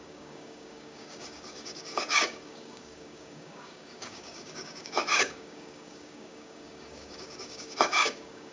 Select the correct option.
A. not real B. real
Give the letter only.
A